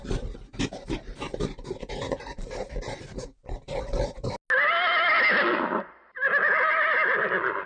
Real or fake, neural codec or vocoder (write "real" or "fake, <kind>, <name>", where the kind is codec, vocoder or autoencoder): real